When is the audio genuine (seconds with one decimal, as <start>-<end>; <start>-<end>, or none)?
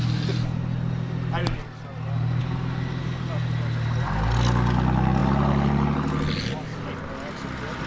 0.0-7.9